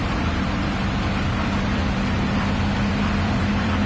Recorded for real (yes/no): no